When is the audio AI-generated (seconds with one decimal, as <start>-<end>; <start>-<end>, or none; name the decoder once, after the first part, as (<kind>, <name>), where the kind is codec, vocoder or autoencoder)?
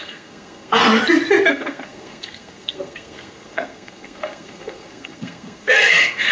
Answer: 0.0-0.8 (codec, SNAC); 1.5-6.3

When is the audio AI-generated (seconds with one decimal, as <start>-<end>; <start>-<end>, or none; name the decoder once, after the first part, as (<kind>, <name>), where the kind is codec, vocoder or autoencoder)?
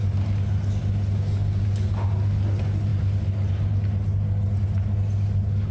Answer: none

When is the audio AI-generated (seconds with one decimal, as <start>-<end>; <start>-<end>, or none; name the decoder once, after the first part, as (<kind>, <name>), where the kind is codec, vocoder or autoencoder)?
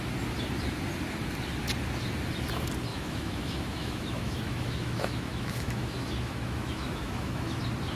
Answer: 2.9-7.6 (autoencoder, DAC-VAE)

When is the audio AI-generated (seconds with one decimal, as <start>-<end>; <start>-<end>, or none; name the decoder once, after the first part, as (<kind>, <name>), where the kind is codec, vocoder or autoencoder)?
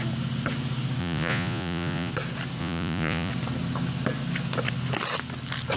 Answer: 1.0-2.1 (vocoder, Vocos); 2.6-3.3